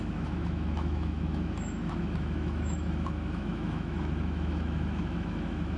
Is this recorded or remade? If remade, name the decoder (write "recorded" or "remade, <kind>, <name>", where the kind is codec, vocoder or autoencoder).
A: remade, autoencoder, DAC-VAE